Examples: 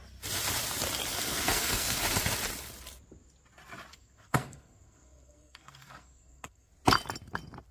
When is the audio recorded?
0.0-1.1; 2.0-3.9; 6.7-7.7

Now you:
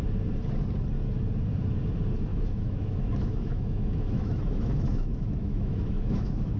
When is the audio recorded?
0.0-2.3

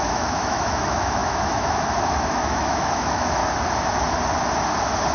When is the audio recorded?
3.4-5.1

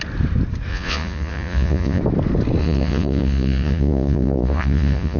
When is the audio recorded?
0.0-0.7; 2.0-2.6